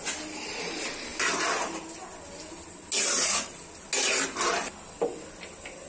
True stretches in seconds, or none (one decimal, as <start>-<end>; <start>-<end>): 0.0-5.9